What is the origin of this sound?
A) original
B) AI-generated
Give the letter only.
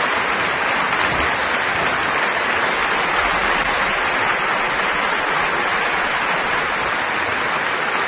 A